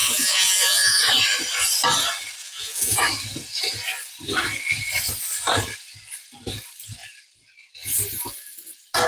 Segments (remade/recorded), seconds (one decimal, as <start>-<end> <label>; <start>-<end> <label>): 0.0-1.0 remade; 1.0-2.4 recorded; 2.4-3.0 remade; 3.0-9.1 recorded